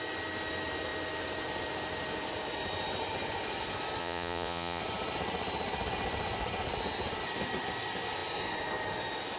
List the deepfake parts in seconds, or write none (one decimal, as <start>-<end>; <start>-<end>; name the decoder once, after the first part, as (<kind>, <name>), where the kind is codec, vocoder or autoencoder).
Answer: 4.0-4.8 (vocoder, Vocos)